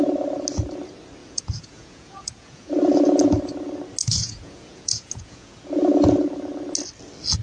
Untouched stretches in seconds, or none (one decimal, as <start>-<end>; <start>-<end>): 0.0-1.2; 2.7-4.0; 5.6-7.4